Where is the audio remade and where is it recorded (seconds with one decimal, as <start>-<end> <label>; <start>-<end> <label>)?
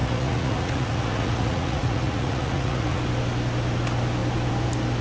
0.0-3.0 remade; 3.0-5.0 recorded